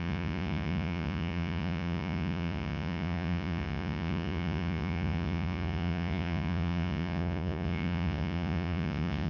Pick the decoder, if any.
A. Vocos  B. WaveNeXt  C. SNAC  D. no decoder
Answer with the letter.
A